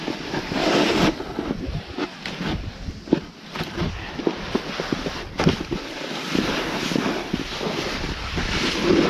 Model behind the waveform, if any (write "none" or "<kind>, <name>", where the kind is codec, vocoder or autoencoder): none